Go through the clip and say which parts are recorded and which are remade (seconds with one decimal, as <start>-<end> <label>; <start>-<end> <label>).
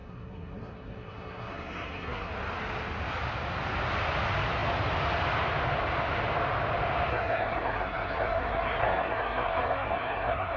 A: 0.0-2.3 remade; 2.3-7.1 recorded; 7.1-10.6 remade